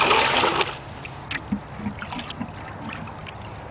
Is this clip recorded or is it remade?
recorded